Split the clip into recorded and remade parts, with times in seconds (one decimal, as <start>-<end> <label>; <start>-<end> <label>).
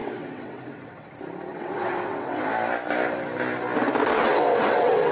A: 0.0-1.1 remade; 1.1-1.5 recorded; 1.5-2.4 remade; 2.4-4.0 recorded; 4.0-5.1 remade